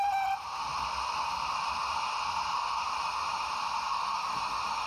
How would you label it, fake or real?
real